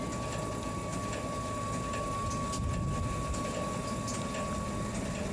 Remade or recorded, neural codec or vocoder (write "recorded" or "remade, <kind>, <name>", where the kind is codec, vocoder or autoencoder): recorded